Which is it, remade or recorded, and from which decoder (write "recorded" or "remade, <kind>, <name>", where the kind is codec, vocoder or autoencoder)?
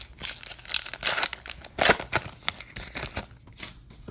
recorded